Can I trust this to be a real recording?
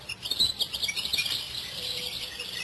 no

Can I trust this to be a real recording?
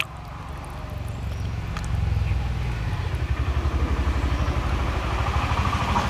yes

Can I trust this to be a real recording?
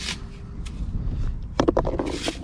yes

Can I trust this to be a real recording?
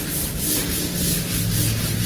yes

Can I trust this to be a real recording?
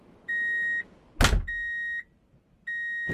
yes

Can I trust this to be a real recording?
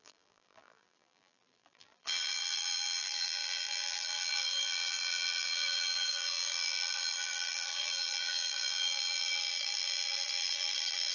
no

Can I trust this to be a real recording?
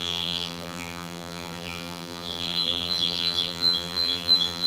no